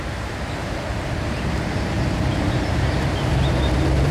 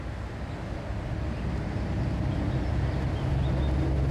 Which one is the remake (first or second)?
first